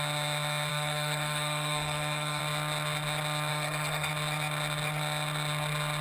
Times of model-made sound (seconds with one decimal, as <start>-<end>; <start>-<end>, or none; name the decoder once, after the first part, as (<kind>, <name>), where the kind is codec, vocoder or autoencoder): 0.7-2.4 (codec, SNAC); 3.5-4.1